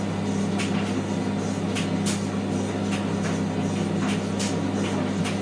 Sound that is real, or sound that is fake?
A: real